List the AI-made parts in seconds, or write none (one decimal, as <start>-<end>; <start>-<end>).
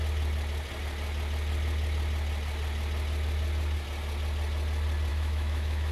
5.1-5.9